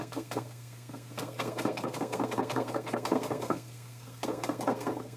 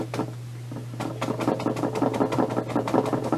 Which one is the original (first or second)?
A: second